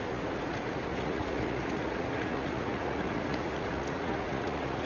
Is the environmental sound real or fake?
fake